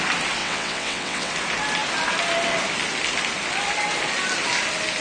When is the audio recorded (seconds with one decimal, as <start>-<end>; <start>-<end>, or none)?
0.0-0.4; 1.3-5.0